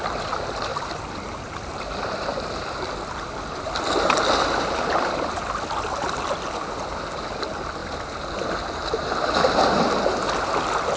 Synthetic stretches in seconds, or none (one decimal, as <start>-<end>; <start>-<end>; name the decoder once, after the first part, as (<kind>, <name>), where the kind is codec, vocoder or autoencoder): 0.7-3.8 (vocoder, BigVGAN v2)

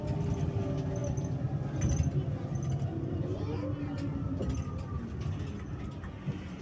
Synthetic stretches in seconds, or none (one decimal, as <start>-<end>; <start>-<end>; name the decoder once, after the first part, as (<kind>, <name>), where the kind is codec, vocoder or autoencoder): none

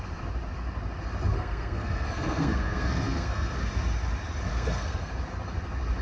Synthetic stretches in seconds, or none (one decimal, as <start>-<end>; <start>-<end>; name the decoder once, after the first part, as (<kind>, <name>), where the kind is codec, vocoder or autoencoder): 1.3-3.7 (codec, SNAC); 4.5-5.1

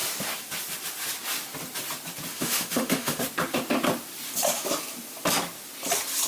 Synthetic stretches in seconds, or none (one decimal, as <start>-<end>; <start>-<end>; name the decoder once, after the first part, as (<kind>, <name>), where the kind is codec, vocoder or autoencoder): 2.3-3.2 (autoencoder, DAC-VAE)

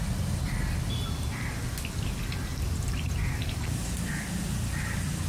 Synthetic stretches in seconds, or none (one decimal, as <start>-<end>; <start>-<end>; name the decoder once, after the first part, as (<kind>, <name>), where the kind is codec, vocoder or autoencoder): 2.5-4.1 (vocoder, BigVGAN v2)

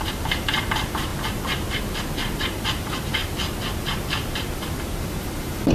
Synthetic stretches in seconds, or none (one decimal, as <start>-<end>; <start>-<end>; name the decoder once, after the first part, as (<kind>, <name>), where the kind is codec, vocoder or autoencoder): 0.0-1.1 (vocoder, BigVGAN v2); 2.4-3.2; 4.4-5.7